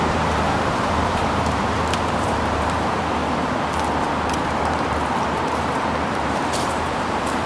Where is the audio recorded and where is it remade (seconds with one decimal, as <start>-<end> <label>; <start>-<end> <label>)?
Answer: 0.0-3.2 remade; 3.2-4.4 recorded; 4.4-7.5 remade